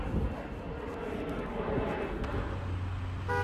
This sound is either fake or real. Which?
real